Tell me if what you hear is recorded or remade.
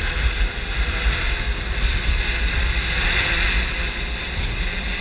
recorded